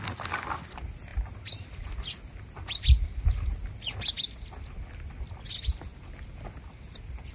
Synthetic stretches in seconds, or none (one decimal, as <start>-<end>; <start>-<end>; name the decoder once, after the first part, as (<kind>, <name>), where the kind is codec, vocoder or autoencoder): none